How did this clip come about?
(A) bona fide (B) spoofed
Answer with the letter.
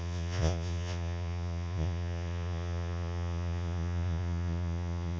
B